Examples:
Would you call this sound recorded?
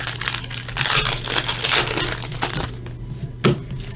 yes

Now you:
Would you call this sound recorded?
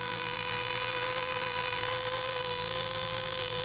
no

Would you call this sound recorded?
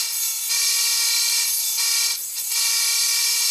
yes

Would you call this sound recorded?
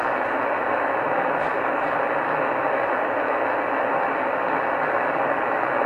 yes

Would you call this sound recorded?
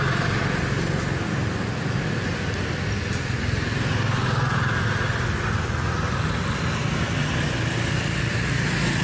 yes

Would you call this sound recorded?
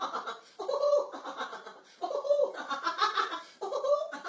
yes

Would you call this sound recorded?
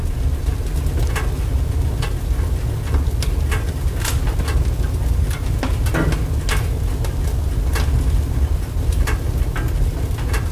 yes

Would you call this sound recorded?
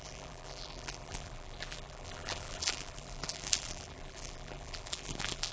no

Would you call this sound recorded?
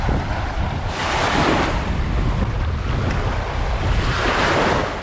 yes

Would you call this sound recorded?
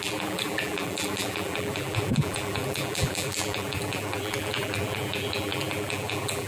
no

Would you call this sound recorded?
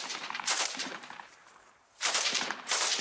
no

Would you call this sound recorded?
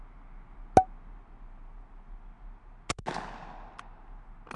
yes